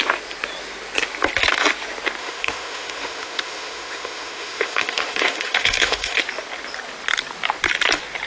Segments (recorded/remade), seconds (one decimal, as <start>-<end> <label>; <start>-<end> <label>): 0.0-2.2 recorded; 2.2-6.2 remade; 6.2-8.3 recorded